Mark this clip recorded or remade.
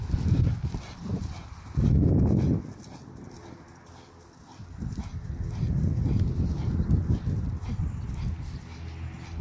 recorded